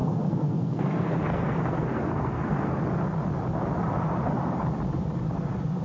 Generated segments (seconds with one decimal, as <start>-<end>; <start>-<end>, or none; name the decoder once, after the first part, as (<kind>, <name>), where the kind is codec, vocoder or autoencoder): 0.0-2.8 (codec, SNAC)